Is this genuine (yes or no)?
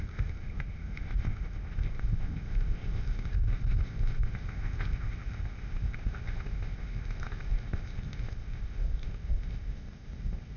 no